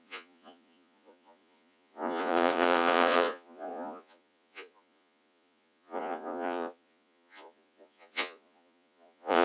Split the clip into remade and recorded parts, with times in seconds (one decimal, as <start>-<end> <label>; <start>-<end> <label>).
0.0-9.4 remade